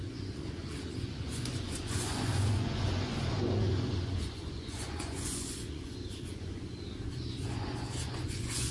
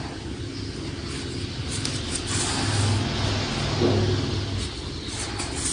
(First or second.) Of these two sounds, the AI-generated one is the first